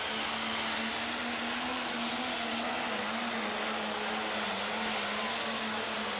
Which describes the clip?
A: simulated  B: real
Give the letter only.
B